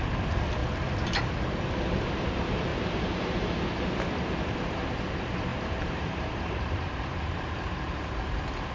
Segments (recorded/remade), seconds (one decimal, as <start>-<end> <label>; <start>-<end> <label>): 0.0-2.7 recorded; 2.7-3.6 remade; 3.6-5.5 recorded; 5.5-7.0 remade; 7.0-8.7 recorded

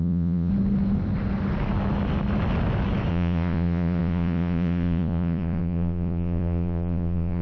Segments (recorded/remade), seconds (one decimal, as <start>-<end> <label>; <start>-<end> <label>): 0.0-0.5 remade; 0.5-3.1 recorded; 3.1-7.4 remade

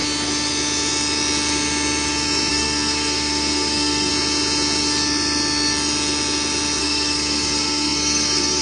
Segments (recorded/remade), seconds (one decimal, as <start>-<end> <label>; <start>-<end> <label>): 0.0-2.5 recorded; 2.5-4.1 remade; 4.1-6.8 recorded; 6.8-8.6 remade

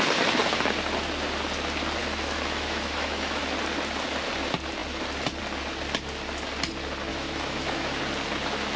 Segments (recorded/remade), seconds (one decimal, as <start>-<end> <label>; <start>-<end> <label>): 0.0-2.0 recorded; 2.0-3.4 remade; 3.4-7.1 recorded; 7.1-8.0 remade; 8.0-8.8 recorded

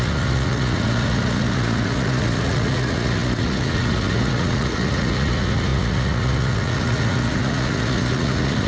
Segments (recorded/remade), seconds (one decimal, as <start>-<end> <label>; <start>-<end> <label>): 0.0-8.7 remade

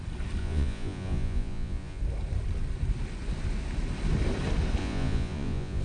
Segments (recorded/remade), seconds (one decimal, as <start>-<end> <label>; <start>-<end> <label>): 0.0-0.4 recorded; 0.4-2.0 remade; 2.0-4.8 recorded; 4.8-5.8 remade